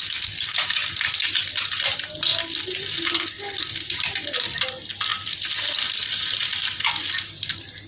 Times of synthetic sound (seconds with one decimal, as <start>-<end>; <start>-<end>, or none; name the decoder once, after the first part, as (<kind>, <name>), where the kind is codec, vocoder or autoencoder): none